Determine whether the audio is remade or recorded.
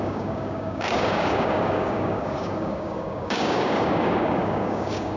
remade